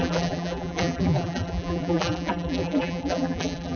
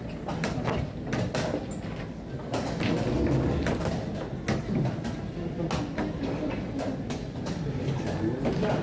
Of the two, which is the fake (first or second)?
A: first